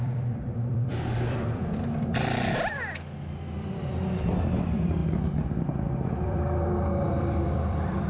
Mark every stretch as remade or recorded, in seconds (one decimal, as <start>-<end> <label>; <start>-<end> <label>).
0.0-1.6 remade; 1.6-3.2 recorded; 3.2-5.0 remade; 5.0-6.2 recorded; 6.2-8.1 remade